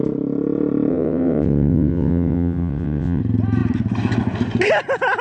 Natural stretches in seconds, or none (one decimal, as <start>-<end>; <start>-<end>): 0.0-0.9; 3.2-5.2